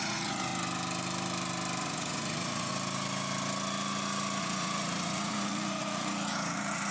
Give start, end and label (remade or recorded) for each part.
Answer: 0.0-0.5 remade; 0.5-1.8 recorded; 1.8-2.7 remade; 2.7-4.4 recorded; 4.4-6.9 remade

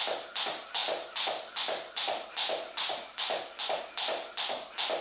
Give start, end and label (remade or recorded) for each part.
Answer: 0.0-5.0 recorded

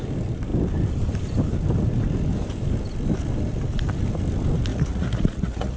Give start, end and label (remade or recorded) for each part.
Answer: 0.0-4.7 recorded; 4.7-5.8 remade

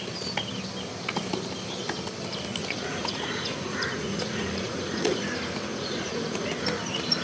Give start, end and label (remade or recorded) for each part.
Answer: 0.0-2.6 recorded; 2.6-5.2 remade; 5.2-5.7 recorded; 5.7-6.6 remade; 6.6-7.2 recorded